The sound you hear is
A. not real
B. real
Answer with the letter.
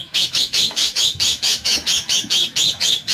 A